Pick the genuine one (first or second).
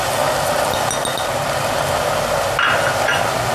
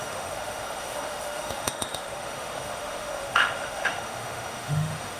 first